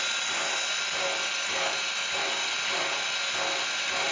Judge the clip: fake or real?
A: real